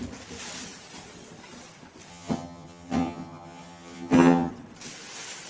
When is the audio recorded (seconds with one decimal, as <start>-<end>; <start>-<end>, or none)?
0.0-2.1; 4.5-5.5